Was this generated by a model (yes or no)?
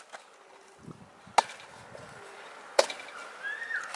no